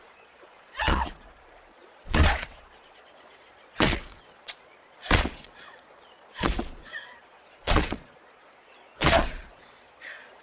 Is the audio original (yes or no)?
no